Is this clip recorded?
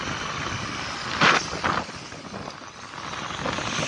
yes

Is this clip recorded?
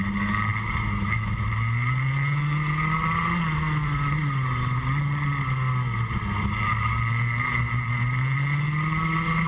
yes